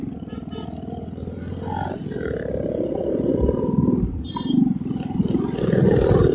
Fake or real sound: real